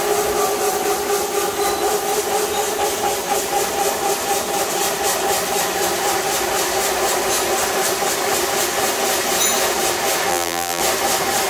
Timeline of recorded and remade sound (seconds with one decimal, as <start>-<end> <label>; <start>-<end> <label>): 0.0-10.3 recorded; 10.3-10.8 remade; 10.8-11.5 recorded